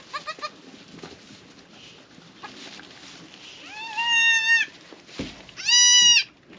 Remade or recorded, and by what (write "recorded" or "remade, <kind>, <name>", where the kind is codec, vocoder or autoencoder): recorded